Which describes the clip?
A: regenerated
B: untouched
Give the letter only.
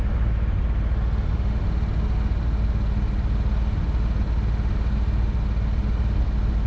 B